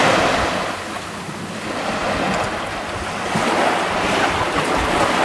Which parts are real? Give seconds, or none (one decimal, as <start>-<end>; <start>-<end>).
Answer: 0.0-5.2